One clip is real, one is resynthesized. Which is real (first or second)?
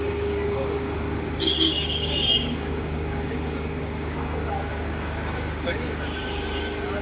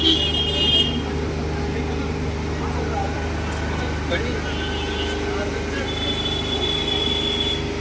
second